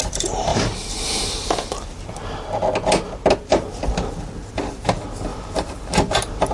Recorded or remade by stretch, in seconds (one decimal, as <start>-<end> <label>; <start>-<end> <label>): 0.0-5.3 recorded; 5.3-5.9 remade; 5.9-6.5 recorded

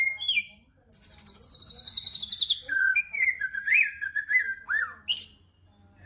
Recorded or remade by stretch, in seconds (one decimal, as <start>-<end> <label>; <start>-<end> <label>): 0.0-6.1 recorded

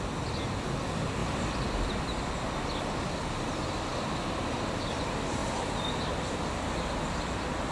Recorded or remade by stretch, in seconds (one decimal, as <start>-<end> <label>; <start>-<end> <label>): 0.0-1.2 recorded; 1.2-2.2 remade; 2.2-3.9 recorded; 3.9-4.4 remade; 4.4-5.4 recorded; 5.4-6.1 remade; 6.1-7.7 recorded

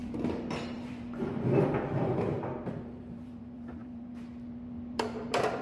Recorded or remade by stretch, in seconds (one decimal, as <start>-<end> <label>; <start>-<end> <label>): 0.0-5.6 remade